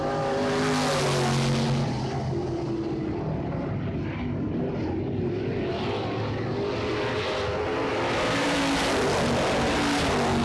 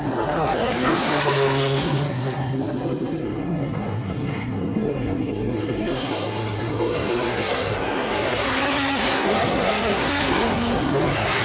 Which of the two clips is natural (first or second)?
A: first